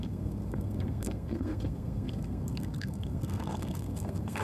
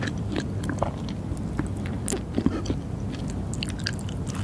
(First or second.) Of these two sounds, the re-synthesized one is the first